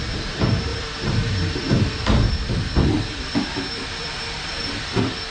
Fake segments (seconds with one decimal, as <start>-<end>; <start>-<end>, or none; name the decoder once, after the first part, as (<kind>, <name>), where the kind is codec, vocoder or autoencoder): 0.0-0.7 (vocoder, BigVGAN v2); 1.3-5.3